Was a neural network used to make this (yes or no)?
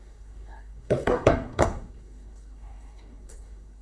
yes